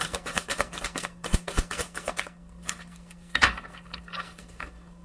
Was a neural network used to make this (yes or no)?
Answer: yes